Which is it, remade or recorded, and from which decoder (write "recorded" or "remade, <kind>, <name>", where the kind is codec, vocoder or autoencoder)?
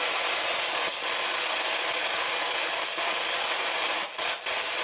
recorded